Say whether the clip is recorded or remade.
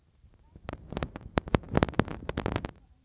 remade